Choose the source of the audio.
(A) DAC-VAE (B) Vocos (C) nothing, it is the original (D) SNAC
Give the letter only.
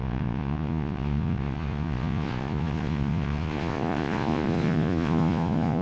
B